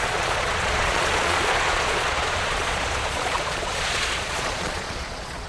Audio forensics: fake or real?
fake